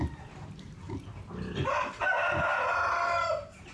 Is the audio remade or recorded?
recorded